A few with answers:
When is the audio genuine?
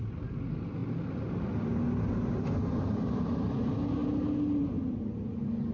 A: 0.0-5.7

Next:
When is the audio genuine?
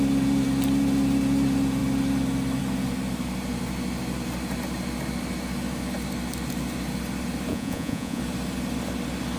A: 0.0-7.5; 8.2-9.4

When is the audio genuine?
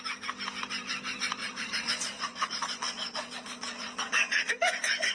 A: 0.0-1.4; 4.5-5.1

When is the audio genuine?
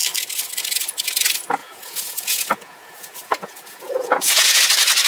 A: 0.0-1.6; 4.6-5.1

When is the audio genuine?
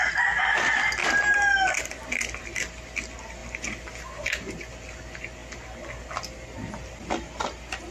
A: 0.0-7.9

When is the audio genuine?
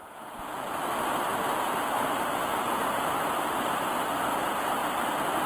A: 0.8-2.5; 3.1-5.5